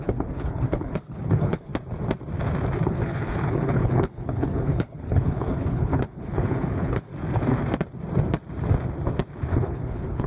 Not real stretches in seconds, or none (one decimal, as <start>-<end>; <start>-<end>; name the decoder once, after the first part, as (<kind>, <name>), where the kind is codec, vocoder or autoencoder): 0.0-1.7 (codec, HILCodec); 2.9-7.1; 9.4-10.3